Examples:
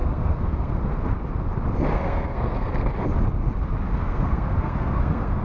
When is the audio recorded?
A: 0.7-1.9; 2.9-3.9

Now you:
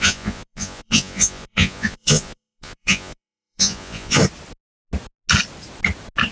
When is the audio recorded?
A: 4.2-6.3

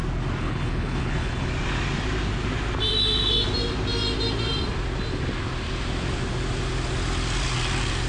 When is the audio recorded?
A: 0.0-0.4; 1.5-8.1

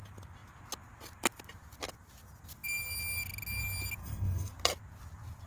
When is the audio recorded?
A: 0.0-4.0; 4.5-5.5

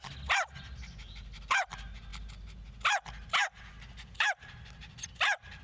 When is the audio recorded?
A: 0.0-5.6

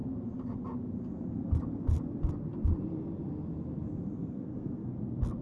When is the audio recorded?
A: 0.0-4.2; 4.9-5.4

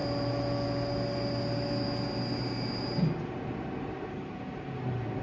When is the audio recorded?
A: 0.0-5.2